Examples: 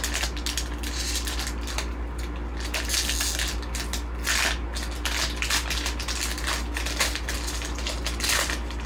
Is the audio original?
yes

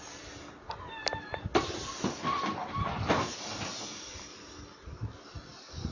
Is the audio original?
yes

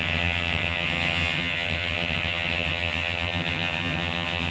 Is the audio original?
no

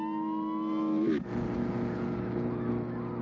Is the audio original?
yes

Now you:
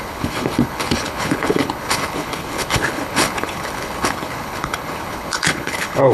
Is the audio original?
no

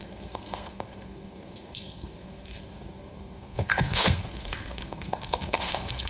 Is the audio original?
no